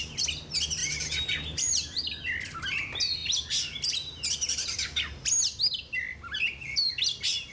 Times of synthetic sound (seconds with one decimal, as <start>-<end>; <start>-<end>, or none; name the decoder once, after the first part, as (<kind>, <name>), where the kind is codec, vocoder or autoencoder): 0.8-2.0 (vocoder, BigVGAN v2)